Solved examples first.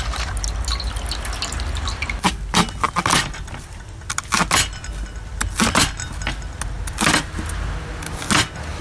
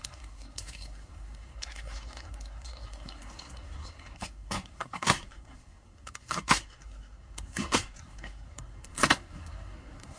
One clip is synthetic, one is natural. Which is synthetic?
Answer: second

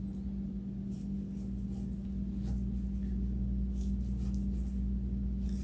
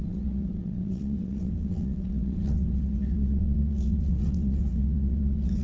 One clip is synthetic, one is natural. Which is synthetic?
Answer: second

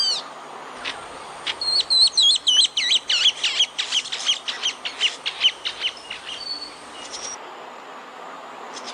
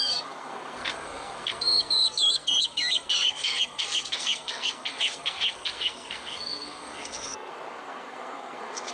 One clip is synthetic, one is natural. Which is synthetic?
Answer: second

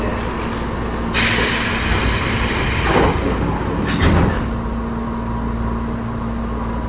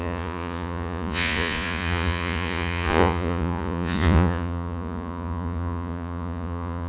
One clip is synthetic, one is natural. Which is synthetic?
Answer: second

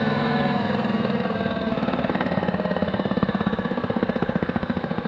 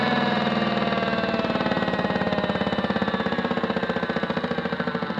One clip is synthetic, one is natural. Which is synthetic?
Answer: first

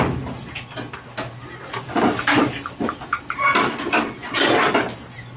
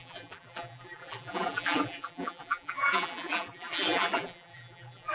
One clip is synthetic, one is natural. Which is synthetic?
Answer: second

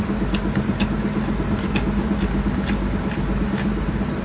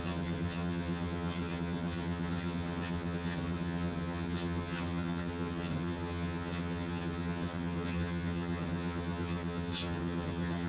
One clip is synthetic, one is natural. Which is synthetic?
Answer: second